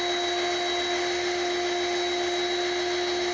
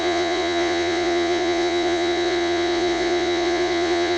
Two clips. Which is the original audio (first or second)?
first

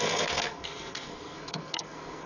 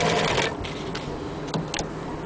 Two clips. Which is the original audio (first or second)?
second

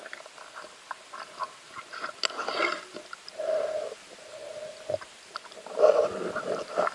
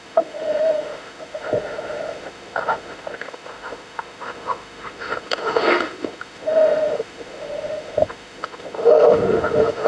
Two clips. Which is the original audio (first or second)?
first